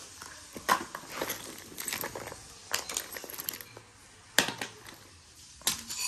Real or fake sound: real